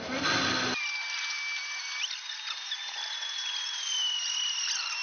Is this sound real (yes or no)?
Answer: yes